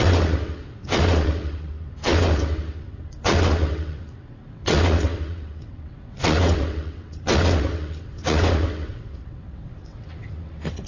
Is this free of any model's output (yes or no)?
no